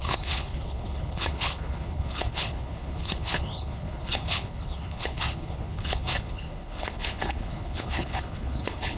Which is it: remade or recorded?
remade